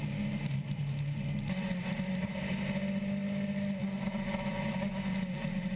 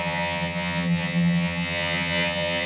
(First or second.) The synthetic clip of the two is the second